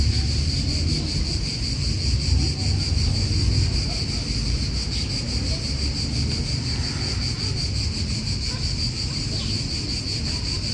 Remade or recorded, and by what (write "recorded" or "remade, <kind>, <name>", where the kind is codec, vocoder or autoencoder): recorded